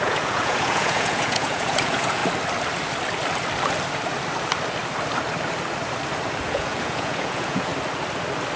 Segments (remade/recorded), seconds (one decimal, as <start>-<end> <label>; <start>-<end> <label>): 0.0-2.2 remade; 2.2-6.4 recorded; 6.4-7.7 remade; 7.7-8.6 recorded